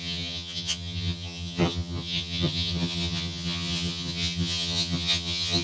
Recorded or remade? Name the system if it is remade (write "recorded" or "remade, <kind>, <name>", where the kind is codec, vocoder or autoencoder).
remade, vocoder, HiFi-GAN